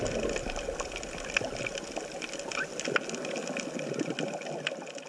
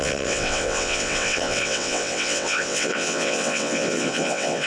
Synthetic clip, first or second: second